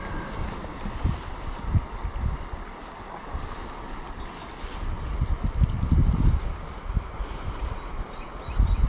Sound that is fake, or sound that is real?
real